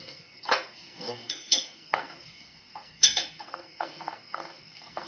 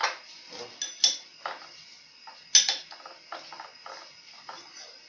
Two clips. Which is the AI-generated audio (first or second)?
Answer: first